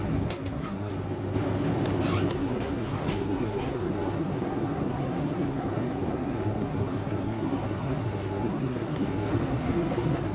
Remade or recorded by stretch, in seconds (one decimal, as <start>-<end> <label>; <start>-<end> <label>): 0.0-0.9 remade; 0.9-2.3 recorded; 2.3-10.3 remade